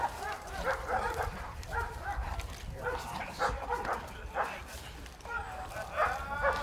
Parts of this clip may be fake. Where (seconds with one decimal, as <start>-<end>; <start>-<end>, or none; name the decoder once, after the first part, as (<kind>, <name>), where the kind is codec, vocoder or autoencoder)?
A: 0.0-2.3 (vocoder, BigVGAN v2)